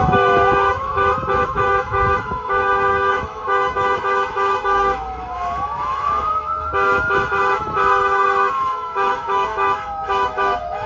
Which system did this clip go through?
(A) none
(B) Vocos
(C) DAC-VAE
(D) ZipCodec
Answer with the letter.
C